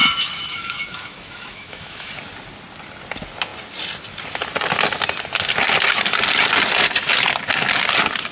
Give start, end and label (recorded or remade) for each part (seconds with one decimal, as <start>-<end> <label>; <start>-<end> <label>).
0.0-2.1 remade; 2.1-8.3 recorded